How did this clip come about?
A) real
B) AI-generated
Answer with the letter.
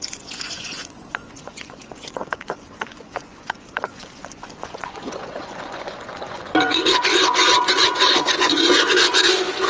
B